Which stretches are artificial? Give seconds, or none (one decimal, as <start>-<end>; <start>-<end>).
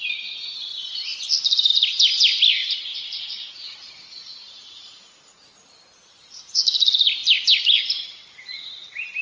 2.6-6.6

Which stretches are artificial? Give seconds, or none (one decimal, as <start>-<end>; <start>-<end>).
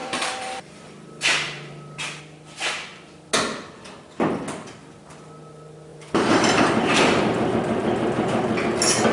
0.0-2.2; 5.9-7.5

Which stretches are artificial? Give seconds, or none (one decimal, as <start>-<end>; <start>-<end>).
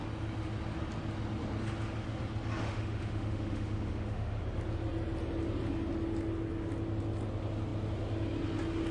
2.6-4.4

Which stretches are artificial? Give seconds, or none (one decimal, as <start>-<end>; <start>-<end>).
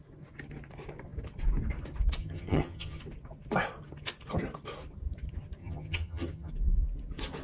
2.2-3.0; 5.6-6.5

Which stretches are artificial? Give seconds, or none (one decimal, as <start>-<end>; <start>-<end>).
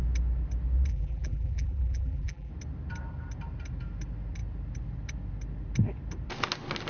0.9-2.5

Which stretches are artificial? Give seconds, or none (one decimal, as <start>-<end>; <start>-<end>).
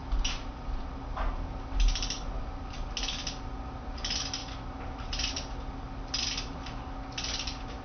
0.0-0.9; 2.4-2.9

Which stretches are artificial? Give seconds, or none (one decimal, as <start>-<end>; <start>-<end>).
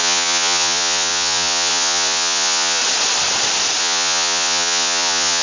0.0-2.8; 3.8-5.4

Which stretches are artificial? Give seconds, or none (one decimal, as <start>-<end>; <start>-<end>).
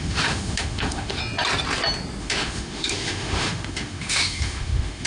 0.0-1.2; 2.2-5.1